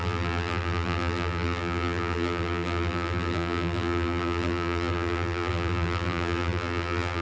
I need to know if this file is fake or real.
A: fake